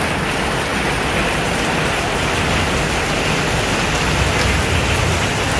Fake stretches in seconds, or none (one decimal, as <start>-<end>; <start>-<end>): none